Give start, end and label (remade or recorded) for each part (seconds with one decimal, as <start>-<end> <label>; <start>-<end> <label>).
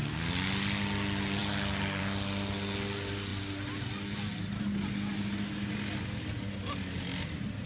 0.0-7.7 recorded